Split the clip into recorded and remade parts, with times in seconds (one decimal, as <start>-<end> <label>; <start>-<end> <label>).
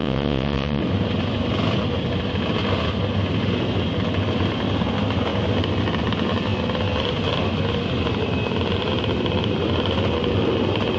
0.0-0.8 remade; 0.8-11.0 recorded